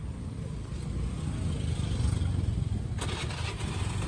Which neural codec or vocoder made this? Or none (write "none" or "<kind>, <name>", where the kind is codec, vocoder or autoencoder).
none